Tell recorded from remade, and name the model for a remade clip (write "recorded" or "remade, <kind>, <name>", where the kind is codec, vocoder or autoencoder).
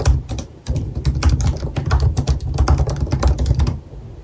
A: remade, vocoder, BigVGAN v2